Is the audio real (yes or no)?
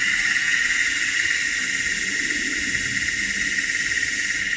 yes